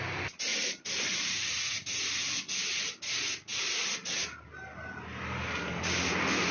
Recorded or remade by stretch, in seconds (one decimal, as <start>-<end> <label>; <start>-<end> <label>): 0.0-0.5 recorded; 0.5-1.6 remade; 1.6-6.5 recorded